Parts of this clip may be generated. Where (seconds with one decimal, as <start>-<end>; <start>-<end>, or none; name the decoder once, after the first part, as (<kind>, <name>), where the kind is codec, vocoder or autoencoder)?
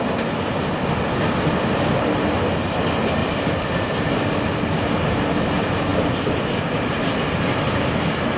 3.2-4.6 (vocoder, BigVGAN v2)